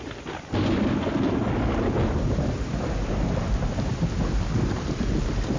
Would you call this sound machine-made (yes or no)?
no